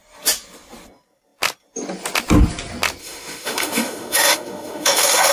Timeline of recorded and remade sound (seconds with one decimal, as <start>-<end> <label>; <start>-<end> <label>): 0.0-3.0 recorded; 3.0-5.3 remade